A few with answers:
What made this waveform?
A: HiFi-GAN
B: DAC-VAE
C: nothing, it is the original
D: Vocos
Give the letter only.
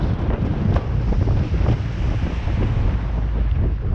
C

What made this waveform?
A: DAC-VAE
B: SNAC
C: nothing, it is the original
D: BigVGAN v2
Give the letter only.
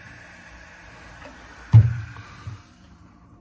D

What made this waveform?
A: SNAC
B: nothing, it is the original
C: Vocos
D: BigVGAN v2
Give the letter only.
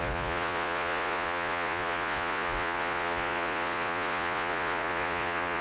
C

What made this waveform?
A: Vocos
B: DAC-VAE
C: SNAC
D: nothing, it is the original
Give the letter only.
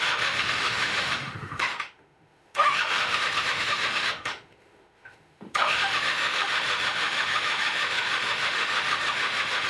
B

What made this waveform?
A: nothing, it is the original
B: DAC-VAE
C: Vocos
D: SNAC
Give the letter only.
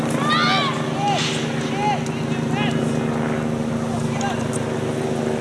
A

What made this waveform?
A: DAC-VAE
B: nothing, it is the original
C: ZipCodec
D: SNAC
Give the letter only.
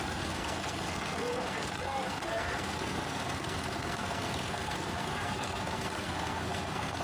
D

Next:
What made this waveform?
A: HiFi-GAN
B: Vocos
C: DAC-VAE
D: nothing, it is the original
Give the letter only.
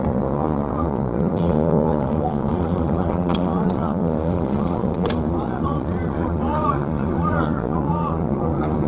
B